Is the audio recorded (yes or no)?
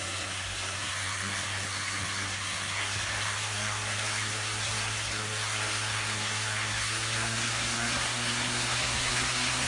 no